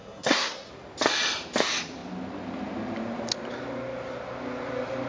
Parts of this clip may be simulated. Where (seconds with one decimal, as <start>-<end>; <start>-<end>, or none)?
0.0-0.7